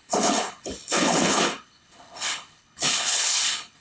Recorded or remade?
remade